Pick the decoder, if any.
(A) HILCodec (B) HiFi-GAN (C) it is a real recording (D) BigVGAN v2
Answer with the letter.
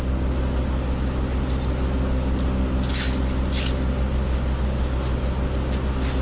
C